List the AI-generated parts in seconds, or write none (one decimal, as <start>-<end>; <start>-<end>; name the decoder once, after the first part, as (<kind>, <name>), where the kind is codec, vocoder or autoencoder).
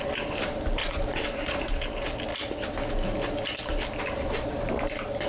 0.8-1.7 (vocoder, BigVGAN v2)